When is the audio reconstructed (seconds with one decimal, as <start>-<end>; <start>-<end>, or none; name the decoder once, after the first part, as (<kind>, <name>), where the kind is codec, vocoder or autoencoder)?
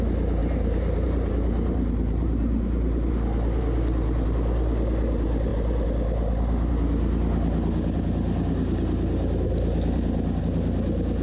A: 0.4-3.1 (vocoder, BigVGAN v2)